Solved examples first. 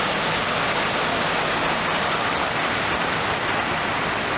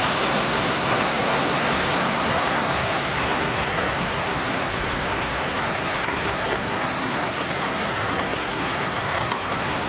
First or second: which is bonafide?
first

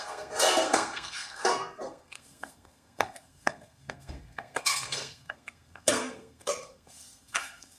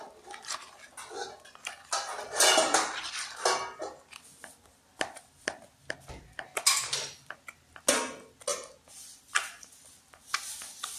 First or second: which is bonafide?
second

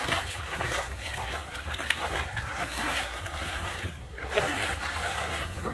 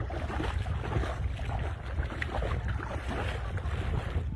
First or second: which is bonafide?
second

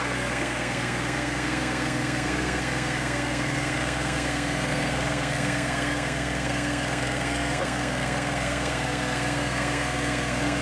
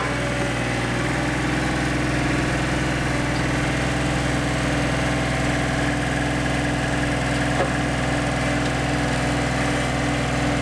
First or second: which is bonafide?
second